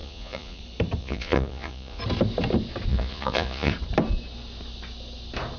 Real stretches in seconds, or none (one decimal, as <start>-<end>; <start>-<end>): 0.6-1.0; 2.0-2.9; 3.7-5.6